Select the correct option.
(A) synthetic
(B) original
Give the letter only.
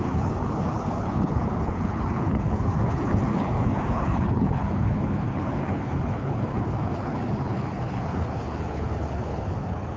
A